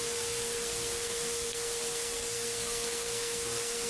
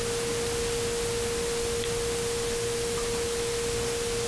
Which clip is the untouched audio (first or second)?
second